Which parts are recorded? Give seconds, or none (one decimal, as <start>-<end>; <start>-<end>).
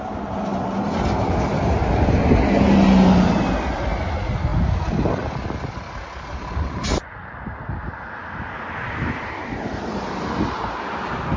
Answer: 0.0-11.4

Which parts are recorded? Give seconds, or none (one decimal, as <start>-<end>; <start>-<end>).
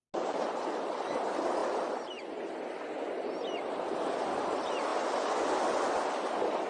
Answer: 0.0-6.7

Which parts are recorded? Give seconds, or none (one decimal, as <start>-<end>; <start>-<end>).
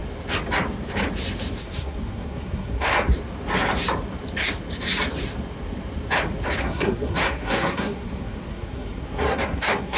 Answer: 0.0-1.6; 2.9-6.6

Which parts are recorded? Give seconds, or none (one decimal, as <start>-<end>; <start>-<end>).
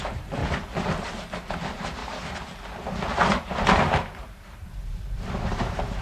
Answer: 0.4-1.1; 2.0-3.5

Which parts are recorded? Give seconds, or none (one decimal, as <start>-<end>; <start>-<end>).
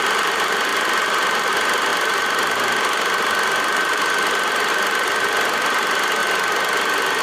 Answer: 0.0-0.7; 1.5-1.9; 4.7-6.2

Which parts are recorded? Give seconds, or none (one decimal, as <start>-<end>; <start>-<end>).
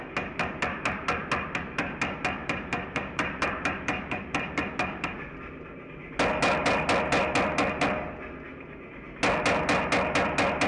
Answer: 0.0-2.4; 4.6-10.7